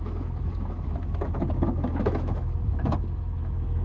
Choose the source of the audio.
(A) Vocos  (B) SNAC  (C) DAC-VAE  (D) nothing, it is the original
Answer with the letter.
C